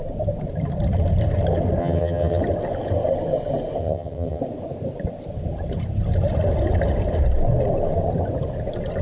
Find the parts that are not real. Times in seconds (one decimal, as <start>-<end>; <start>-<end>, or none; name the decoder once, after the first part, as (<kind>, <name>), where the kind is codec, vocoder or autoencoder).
1.8-2.4 (vocoder, HiFi-GAN); 3.8-4.4

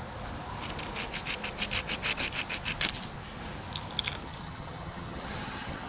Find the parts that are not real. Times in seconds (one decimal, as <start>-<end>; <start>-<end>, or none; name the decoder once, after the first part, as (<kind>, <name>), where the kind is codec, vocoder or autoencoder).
4.2-5.9 (vocoder, HiFi-GAN)

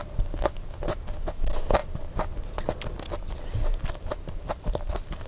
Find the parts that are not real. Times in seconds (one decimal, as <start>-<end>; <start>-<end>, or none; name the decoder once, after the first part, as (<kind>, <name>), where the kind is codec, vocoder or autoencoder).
none

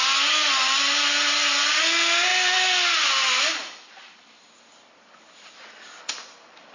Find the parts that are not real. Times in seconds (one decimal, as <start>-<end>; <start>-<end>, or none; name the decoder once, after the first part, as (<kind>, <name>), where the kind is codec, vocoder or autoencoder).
none

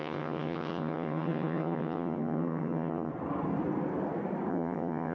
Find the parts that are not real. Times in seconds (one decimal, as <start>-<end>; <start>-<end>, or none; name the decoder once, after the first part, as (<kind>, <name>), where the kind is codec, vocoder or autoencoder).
0.0-3.1 (vocoder, HiFi-GAN); 4.5-5.1